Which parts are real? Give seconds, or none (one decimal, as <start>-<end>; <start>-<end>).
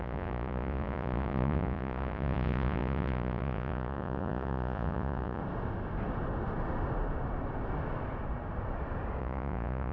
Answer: 5.4-9.2